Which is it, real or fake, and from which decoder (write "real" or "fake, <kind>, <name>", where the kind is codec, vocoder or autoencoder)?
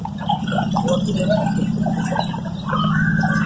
real